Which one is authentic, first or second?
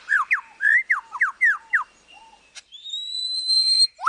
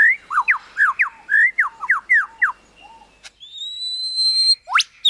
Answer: second